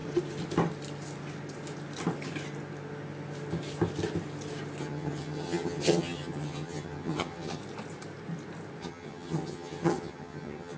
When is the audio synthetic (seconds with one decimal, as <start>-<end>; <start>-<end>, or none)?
4.8-7.6; 8.8-10.8